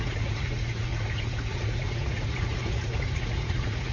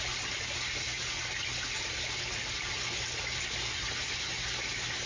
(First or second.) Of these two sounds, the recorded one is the second